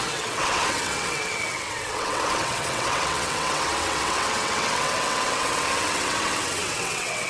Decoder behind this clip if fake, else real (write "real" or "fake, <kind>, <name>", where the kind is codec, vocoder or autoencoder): fake, vocoder, WaveNeXt